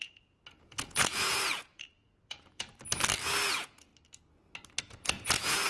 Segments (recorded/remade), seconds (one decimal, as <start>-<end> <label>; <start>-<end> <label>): 0.0-2.7 remade; 2.7-3.5 recorded; 3.5-3.9 remade; 3.9-4.8 recorded; 4.8-5.7 remade